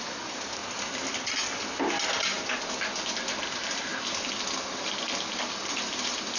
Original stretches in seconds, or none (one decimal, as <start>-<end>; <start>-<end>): 0.0-6.4